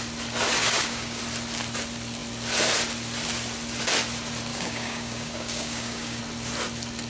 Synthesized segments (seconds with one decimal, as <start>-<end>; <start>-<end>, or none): 0.6-1.2; 4.5-6.2